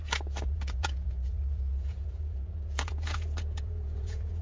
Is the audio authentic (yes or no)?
no